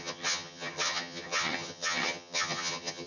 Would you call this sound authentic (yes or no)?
no